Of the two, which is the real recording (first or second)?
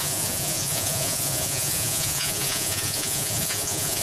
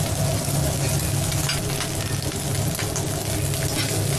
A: second